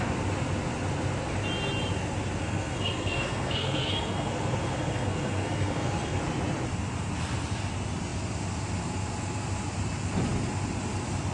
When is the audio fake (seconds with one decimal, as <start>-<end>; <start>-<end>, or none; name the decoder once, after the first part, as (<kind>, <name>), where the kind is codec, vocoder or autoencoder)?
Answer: 2.4-6.2 (codec, SNAC)